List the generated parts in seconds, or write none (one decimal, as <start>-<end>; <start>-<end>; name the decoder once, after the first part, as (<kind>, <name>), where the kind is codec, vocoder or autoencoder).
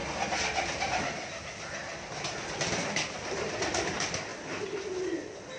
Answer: none